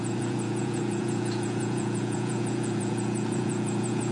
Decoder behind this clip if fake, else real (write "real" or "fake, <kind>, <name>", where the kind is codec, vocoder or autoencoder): fake, vocoder, Vocos